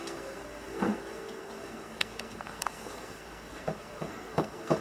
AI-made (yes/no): yes